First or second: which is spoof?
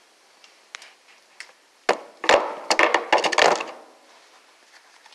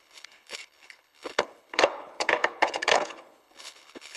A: second